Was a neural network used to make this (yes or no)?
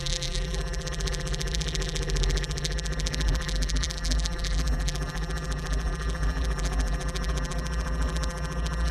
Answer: yes